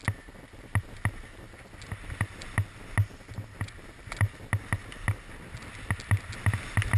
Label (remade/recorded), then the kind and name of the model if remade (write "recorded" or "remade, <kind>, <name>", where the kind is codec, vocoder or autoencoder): recorded